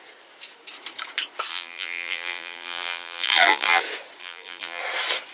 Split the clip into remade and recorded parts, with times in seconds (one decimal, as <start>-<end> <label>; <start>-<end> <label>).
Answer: 0.0-1.5 recorded; 1.5-3.8 remade; 3.8-4.2 recorded; 4.2-4.8 remade; 4.8-5.3 recorded